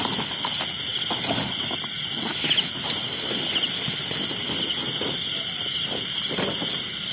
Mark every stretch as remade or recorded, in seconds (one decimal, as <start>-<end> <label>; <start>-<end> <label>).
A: 0.0-7.1 recorded